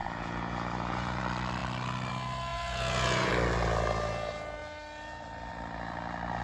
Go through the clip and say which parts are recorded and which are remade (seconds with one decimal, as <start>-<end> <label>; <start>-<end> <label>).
0.0-1.2 remade; 1.2-2.5 recorded; 2.5-3.3 remade; 3.3-6.4 recorded